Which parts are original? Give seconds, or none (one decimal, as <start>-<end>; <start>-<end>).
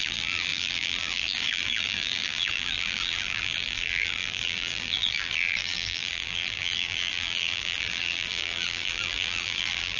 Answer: none